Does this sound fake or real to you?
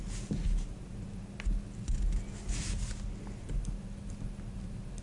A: real